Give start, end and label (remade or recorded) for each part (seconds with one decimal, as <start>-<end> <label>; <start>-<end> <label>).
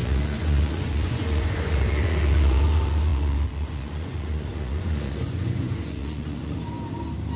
0.0-6.6 remade; 6.6-7.4 recorded